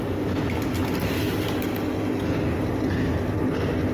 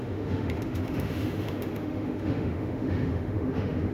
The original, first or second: first